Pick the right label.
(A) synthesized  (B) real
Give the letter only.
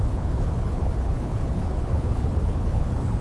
A